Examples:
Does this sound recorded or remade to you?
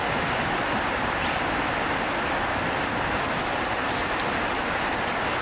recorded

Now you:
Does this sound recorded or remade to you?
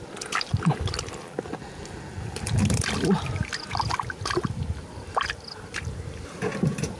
recorded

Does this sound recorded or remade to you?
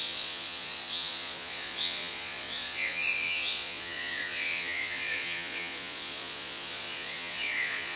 remade